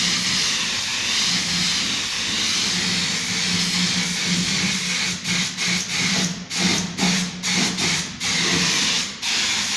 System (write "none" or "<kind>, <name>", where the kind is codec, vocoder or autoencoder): none